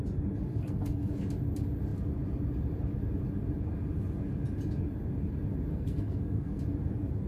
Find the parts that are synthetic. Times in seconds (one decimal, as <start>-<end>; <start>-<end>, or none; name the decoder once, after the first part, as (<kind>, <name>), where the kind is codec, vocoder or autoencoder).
0.5-1.1 (codec, SNAC); 5.7-6.6